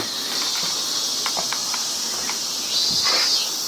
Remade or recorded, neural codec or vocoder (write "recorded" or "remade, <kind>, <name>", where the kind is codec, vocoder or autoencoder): recorded